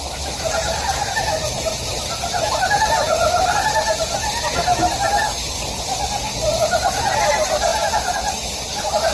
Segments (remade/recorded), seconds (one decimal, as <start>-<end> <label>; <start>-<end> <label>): 0.0-9.1 recorded